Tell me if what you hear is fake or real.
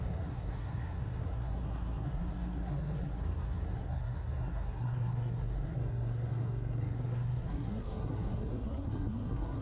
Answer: fake